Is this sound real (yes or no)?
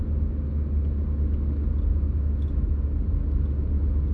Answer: yes